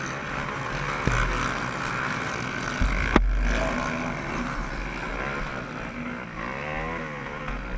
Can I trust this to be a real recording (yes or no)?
yes